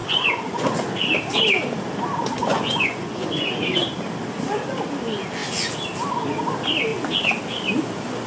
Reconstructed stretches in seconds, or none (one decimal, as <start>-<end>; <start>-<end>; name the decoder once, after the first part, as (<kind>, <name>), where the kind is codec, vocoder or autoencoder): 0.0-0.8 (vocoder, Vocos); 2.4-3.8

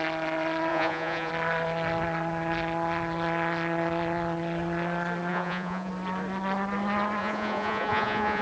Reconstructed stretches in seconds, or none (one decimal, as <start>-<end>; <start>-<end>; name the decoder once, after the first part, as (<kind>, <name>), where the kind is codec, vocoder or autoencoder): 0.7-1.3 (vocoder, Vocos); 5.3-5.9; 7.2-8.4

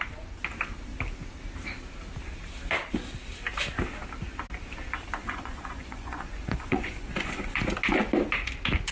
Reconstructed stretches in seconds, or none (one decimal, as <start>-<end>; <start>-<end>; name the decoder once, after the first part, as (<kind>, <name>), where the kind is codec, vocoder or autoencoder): 5.2-7.6 (vocoder, Vocos)